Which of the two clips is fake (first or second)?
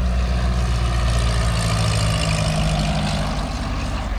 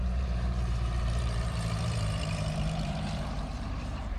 second